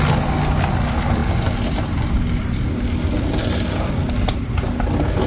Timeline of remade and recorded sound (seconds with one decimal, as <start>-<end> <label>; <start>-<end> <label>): 0.0-5.3 recorded